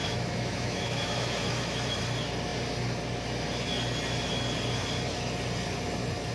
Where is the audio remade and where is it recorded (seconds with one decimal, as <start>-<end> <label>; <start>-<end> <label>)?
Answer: 0.0-2.0 remade; 2.0-6.3 recorded